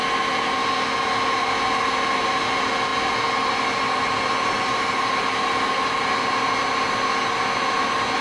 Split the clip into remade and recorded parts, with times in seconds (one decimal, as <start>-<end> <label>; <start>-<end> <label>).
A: 0.0-8.2 recorded